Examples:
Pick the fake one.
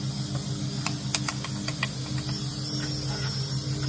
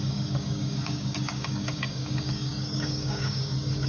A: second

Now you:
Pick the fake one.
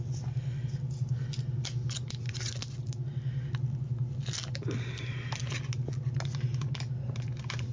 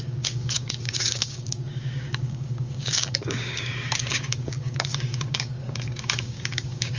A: second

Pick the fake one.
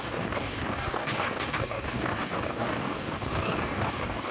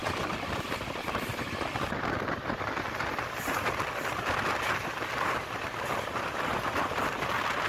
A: first